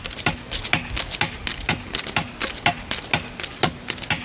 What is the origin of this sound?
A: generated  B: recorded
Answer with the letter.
B